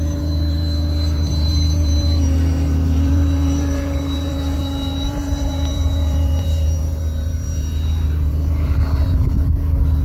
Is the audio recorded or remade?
remade